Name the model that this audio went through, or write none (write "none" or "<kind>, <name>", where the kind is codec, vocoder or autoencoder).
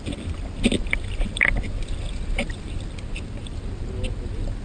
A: none